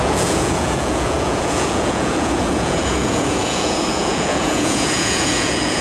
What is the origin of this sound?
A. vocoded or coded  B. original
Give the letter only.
A